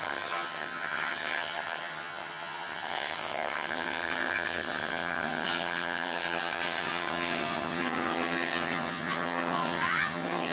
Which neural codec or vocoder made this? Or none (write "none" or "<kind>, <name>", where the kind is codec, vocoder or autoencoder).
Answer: vocoder, HiFi-GAN